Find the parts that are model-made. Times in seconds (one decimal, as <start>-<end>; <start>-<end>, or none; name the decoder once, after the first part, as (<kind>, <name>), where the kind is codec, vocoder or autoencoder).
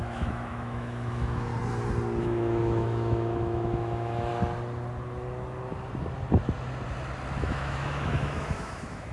0.0-1.5 (autoencoder, DAC-VAE); 2.2-4.3; 7.4-9.1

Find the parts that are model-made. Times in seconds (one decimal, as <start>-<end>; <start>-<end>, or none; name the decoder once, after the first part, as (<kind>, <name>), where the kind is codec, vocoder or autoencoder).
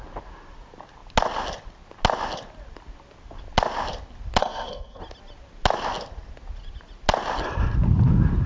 4.4-5.0 (codec, SNAC)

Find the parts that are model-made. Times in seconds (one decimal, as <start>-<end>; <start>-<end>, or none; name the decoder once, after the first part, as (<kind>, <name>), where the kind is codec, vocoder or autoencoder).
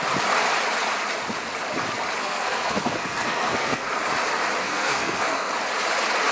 2.2-3.9 (codec, SNAC); 4.6-5.5